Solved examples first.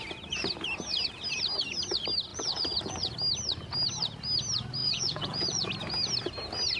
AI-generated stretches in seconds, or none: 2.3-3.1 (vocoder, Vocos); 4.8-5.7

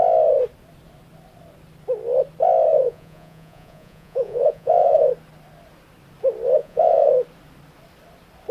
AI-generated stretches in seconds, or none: 2.7-5.1 (vocoder, Vocos); 6.6-7.1

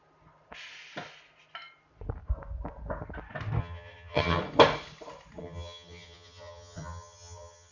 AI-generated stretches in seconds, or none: 3.6-4.4 (vocoder, HiFi-GAN); 5.4-7.7

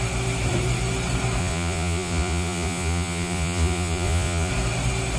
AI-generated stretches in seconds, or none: 1.4-4.5 (vocoder, Vocos)

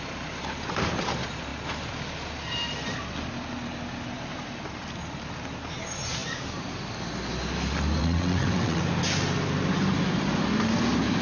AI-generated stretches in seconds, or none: 8.0-8.8 (vocoder, WaveNeXt)